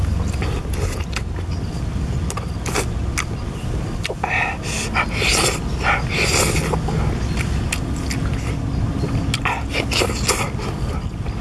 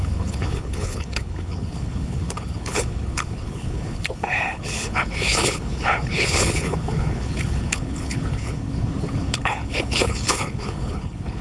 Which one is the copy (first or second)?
second